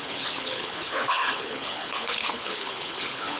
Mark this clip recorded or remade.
remade